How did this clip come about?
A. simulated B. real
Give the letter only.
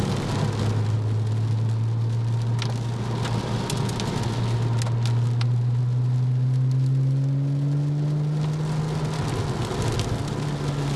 B